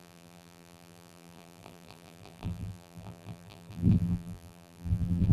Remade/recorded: remade